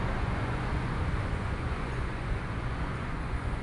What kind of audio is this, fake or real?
fake